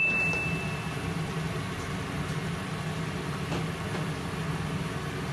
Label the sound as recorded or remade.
recorded